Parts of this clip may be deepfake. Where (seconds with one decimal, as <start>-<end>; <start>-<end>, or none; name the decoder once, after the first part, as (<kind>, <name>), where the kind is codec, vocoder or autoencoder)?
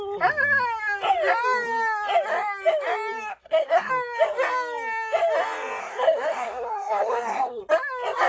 3.3-3.9 (codec, SNAC); 5.8-7.6